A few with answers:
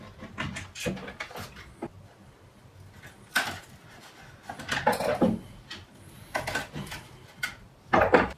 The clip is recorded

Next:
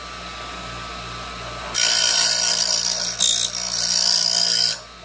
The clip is recorded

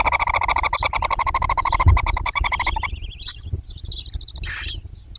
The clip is recorded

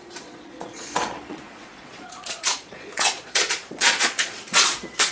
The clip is remade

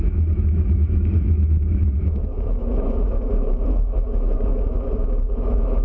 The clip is remade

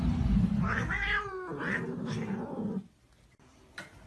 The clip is remade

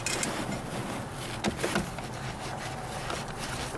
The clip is recorded